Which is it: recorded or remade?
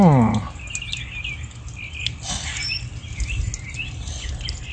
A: recorded